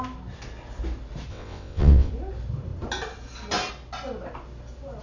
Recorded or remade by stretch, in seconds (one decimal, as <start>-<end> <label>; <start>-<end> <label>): 0.0-1.3 recorded; 1.3-2.1 remade; 2.1-5.0 recorded